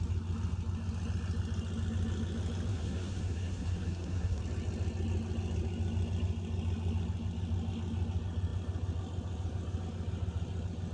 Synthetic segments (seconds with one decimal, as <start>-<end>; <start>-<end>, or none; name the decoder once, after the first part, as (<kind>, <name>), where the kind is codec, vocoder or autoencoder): 2.7-4.4 (codec, SNAC)